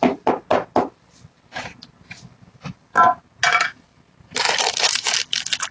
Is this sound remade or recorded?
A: recorded